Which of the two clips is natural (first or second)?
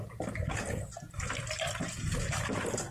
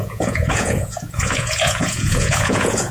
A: first